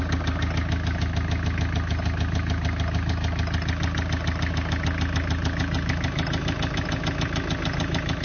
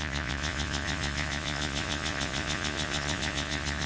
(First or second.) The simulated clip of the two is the second